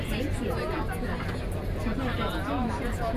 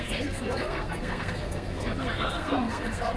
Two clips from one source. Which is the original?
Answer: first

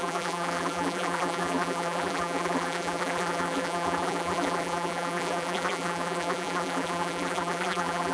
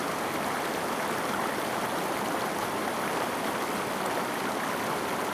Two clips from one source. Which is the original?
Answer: second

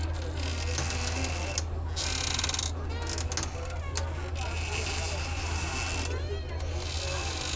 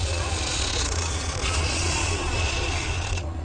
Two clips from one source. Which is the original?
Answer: first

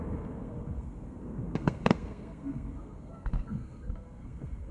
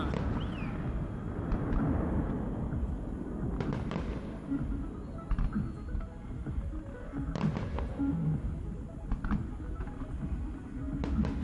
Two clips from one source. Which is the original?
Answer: second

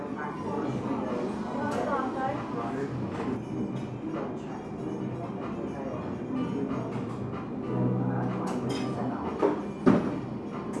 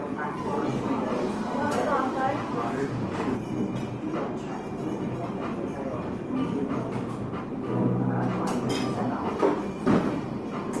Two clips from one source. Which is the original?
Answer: first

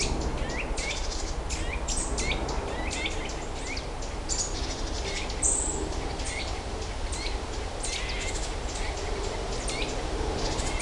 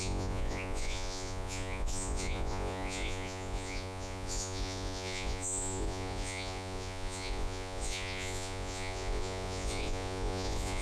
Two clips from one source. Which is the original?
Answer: first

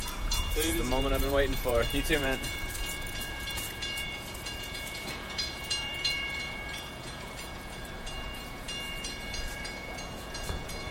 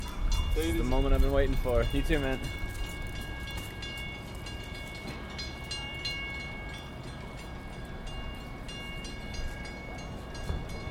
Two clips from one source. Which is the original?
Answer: second